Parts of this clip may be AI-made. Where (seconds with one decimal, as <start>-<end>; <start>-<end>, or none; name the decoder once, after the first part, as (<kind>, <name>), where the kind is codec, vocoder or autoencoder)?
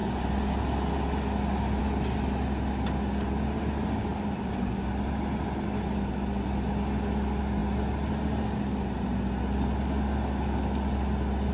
4.1-4.7 (vocoder, BigVGAN v2)